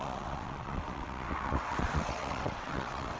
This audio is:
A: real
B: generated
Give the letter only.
B